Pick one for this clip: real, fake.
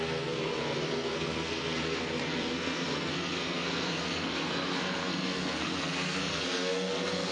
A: fake